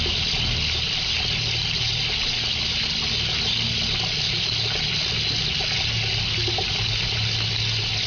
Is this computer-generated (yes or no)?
no